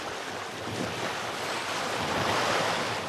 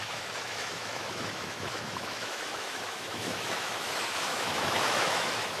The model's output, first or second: second